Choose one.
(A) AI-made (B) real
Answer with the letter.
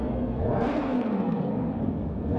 A